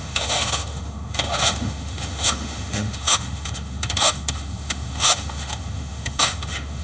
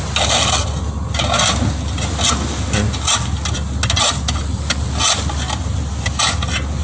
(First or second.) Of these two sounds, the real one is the second